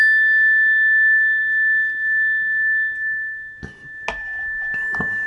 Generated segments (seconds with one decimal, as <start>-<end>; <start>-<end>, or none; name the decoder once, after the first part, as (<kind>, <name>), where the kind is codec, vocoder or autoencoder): none